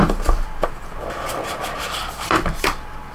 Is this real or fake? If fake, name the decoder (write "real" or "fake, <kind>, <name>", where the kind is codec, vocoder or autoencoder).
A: real